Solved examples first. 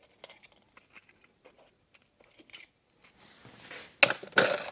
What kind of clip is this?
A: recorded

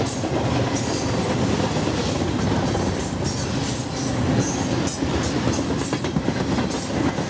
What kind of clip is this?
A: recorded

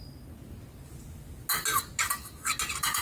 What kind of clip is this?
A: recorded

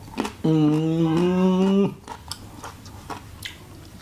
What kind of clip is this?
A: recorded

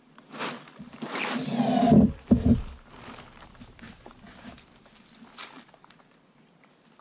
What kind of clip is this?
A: remade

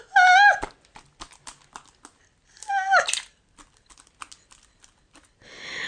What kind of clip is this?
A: recorded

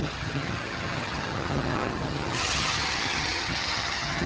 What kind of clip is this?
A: remade